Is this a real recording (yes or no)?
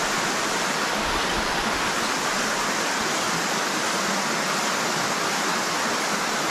yes